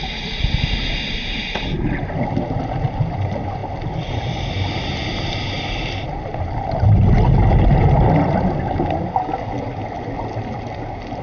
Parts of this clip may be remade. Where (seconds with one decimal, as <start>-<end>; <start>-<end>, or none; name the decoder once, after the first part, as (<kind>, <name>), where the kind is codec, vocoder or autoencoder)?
none

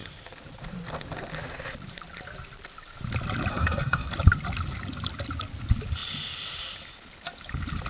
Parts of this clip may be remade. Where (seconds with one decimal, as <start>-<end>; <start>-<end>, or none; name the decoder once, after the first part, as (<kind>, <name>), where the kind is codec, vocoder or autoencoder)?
3.5-4.1 (codec, SNAC)

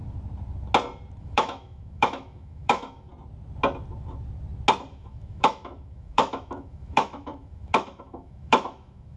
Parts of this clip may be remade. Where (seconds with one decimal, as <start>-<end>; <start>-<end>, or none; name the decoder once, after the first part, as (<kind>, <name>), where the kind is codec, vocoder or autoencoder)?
1.2-3.1 (autoencoder, DAC-VAE); 4.9-9.2

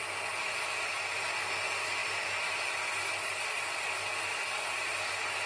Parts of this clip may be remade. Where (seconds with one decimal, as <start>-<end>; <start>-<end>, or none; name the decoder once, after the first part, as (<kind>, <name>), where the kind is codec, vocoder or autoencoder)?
none

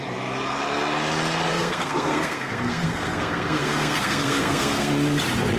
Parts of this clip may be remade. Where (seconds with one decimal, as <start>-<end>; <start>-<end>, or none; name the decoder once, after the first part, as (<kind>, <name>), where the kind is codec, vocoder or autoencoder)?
1.5-4.9 (codec, SNAC)